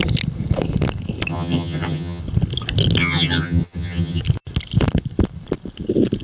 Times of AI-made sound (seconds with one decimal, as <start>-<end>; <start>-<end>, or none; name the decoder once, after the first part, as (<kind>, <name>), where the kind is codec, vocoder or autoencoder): 1.3-2.2 (vocoder, HiFi-GAN); 3.0-4.2